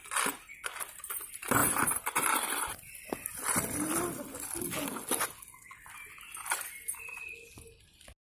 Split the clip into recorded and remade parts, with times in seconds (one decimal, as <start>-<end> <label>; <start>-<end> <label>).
0.0-1.6 recorded; 1.6-4.6 remade; 4.6-8.3 recorded